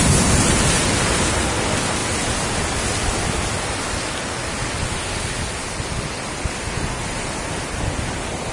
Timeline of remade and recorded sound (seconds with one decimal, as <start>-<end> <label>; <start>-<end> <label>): 0.0-8.5 recorded